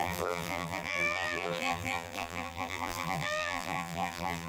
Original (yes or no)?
no